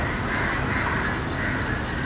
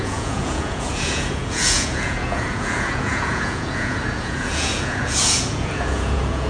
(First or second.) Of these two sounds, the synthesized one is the second